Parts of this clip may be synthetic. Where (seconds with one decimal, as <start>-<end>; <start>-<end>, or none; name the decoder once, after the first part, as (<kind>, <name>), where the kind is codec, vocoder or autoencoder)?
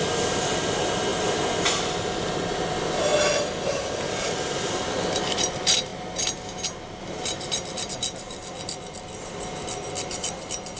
none